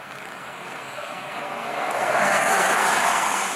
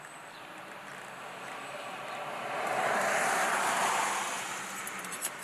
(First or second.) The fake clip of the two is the first